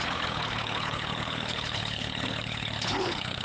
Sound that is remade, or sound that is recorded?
remade